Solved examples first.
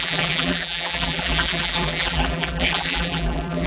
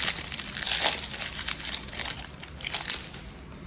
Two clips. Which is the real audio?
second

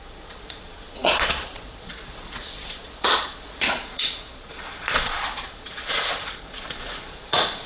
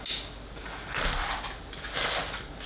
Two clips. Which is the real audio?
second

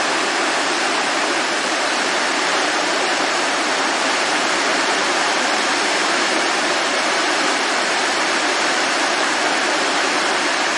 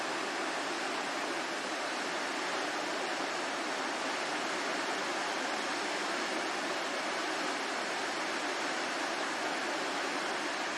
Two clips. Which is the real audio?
second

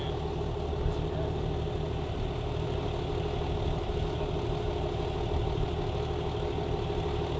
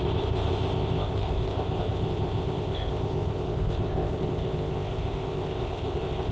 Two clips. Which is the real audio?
first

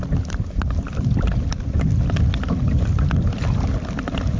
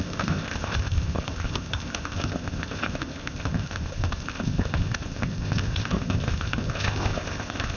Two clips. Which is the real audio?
first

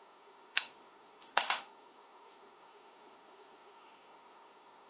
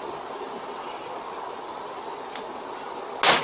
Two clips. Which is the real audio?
second